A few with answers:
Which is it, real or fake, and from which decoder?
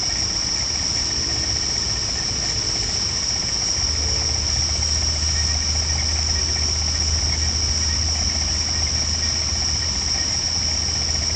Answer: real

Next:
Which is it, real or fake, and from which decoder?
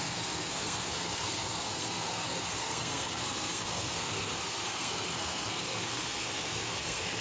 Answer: fake, codec, SNAC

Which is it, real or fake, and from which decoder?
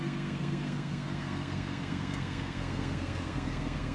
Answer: fake, codec, SNAC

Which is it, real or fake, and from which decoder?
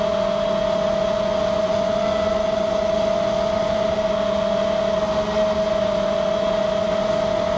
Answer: real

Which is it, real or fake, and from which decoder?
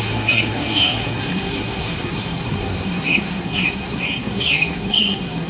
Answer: fake, codec, SNAC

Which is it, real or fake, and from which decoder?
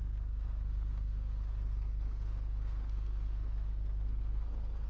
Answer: fake, codec, SNAC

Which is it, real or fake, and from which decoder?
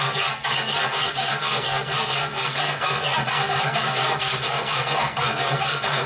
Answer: fake, codec, SNAC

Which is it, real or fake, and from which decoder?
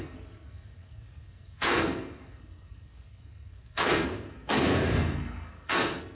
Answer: fake, codec, SNAC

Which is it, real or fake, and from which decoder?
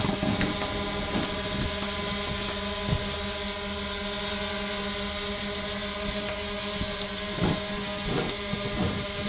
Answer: real